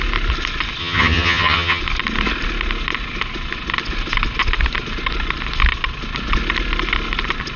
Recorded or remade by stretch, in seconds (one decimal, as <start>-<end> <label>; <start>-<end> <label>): 0.0-0.8 recorded; 0.8-1.8 remade; 1.8-7.6 recorded